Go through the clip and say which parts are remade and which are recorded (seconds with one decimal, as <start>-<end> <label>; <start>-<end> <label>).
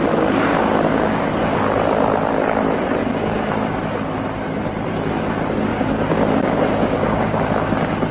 0.0-1.3 remade; 1.3-3.0 recorded; 3.0-3.5 remade; 3.5-5.7 recorded; 5.7-7.4 remade; 7.4-8.1 recorded